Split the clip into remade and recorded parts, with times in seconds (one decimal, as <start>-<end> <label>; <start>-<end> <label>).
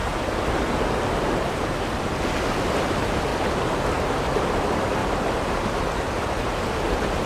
0.0-1.7 remade; 1.7-7.3 recorded